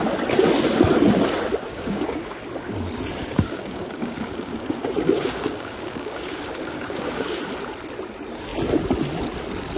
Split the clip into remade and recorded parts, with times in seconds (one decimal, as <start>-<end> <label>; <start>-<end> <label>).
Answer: 0.0-1.7 recorded; 1.7-2.4 remade; 2.4-3.2 recorded; 3.2-7.4 remade; 7.4-9.8 recorded